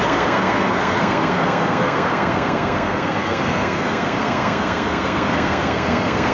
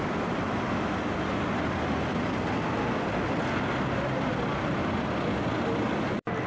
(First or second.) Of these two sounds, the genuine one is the second